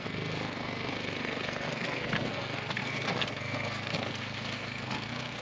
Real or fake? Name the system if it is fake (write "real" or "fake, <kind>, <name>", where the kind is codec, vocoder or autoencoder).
fake, codec, SNAC